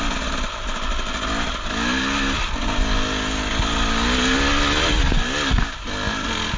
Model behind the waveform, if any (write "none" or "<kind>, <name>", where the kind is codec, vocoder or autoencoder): none